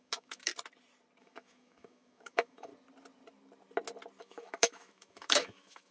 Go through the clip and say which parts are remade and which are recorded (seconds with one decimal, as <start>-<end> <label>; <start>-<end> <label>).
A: 0.0-0.5 remade; 0.5-1.2 recorded; 1.2-2.7 remade; 2.7-4.2 recorded; 4.2-5.9 remade